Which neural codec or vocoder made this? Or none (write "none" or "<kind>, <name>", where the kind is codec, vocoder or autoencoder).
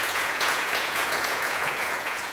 vocoder, Vocos